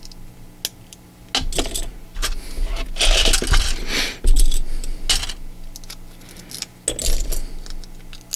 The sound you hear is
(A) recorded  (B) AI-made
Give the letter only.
A